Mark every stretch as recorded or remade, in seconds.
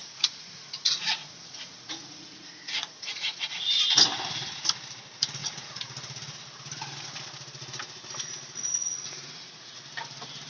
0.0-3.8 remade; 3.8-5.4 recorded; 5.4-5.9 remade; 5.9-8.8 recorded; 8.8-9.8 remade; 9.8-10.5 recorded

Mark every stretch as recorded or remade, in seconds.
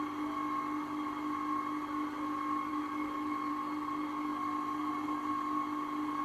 0.0-2.7 recorded; 2.7-3.5 remade; 3.5-6.2 recorded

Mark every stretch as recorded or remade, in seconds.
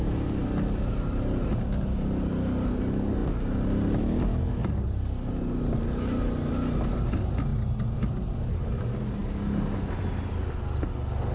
0.0-11.3 recorded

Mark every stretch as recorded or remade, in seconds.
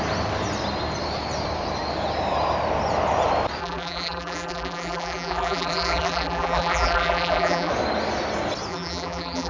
0.0-3.6 recorded; 3.6-7.7 remade; 7.7-8.7 recorded; 8.7-9.5 remade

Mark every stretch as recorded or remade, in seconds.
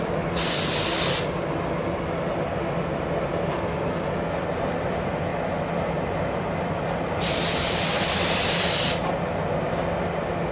0.0-10.5 recorded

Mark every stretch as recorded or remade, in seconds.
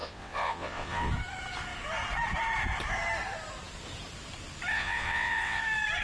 0.0-1.1 remade; 1.1-4.7 recorded; 4.7-5.6 remade; 5.6-6.0 recorded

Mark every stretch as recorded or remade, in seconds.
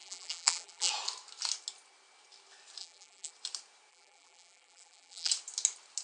0.0-0.9 remade; 0.9-2.8 recorded; 2.8-3.3 remade; 3.3-3.9 recorded; 3.9-5.3 remade; 5.3-6.0 recorded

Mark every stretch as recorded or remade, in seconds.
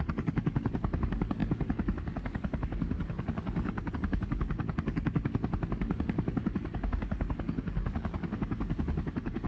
0.0-9.5 remade